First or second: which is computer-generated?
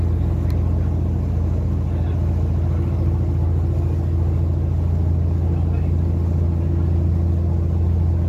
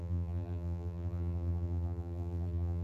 second